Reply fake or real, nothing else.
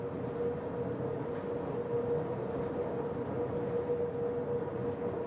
real